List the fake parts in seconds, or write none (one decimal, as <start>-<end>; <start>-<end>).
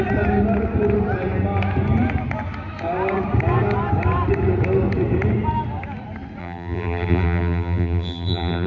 6.4-8.7